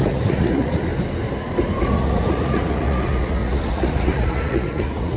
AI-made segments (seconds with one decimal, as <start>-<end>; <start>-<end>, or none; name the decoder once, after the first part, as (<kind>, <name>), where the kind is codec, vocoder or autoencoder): 0.0-0.9 (vocoder, Vocos); 1.8-5.2